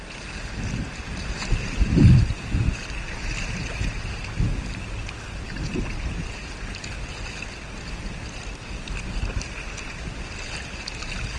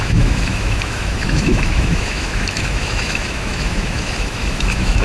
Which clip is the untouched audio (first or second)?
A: first